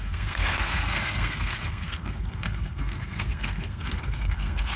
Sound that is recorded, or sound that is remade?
remade